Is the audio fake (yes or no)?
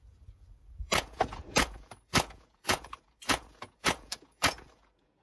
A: yes